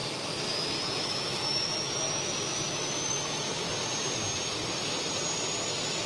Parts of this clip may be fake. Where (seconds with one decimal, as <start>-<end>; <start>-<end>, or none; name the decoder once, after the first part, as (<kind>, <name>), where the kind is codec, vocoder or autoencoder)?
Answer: 0.0-3.7 (autoencoder, DAC-VAE)